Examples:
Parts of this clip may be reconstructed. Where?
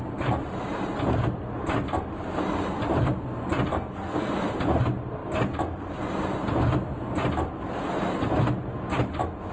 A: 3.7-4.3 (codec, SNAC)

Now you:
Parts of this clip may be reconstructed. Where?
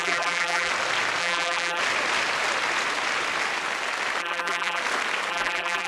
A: 0.0-0.7 (vocoder, BigVGAN v2); 1.2-1.8; 4.2-4.8; 5.3-5.9